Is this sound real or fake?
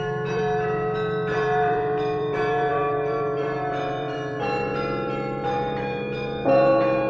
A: fake